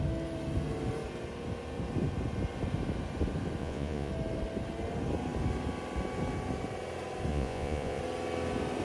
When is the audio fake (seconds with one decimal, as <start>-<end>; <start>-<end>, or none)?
3.6-4.1; 7.3-8.0